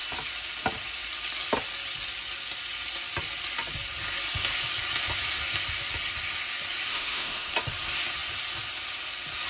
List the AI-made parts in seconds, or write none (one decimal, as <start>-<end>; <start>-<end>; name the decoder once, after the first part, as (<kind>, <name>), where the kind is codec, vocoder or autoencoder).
6.9-7.5 (autoencoder, DAC-VAE)